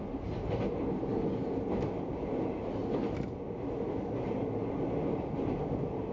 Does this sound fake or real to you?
real